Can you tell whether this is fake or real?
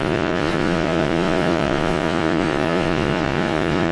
fake